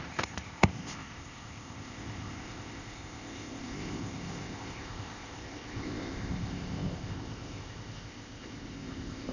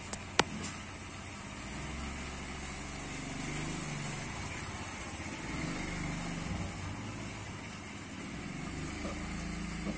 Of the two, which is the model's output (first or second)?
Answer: first